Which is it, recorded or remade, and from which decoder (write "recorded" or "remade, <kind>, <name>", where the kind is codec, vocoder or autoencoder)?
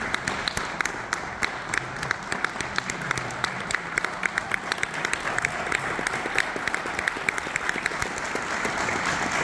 recorded